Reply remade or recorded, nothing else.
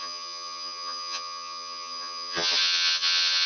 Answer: remade